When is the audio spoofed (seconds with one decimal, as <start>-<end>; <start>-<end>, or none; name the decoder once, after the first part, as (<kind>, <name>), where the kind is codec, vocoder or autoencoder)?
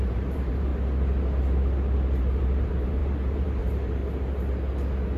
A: 0.0-0.7 (vocoder, BigVGAN v2); 2.2-4.0